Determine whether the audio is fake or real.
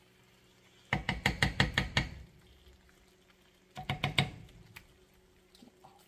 real